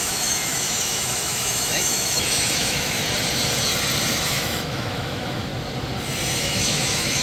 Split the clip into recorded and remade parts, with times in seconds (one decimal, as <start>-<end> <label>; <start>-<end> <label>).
0.0-3.0 remade; 3.0-4.1 recorded; 4.1-5.5 remade; 5.5-6.4 recorded; 6.4-7.2 remade